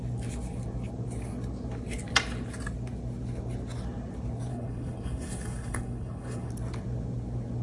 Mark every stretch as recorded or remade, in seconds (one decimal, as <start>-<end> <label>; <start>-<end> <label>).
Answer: 0.0-4.5 recorded; 4.5-6.5 remade; 6.5-7.6 recorded